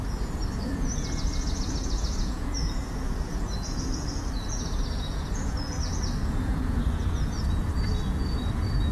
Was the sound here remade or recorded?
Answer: remade